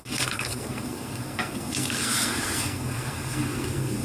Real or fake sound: fake